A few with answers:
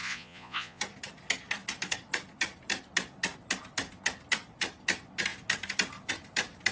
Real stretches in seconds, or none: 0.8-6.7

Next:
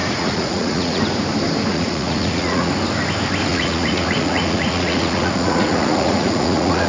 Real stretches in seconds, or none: 1.0-1.7; 2.7-3.5

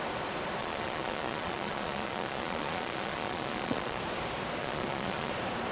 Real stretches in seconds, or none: 0.0-0.6; 4.0-4.6; 5.3-5.7

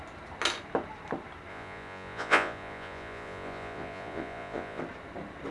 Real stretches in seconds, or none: 0.0-1.5; 4.8-5.5

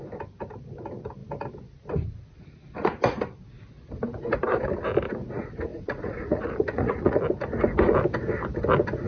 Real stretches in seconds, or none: 0.0-5.7; 7.2-9.1

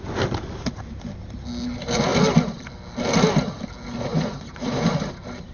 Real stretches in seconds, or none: 0.0-4.1; 5.1-5.5

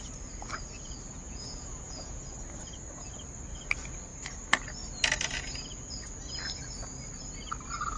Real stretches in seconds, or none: 0.0-1.2; 2.2-8.0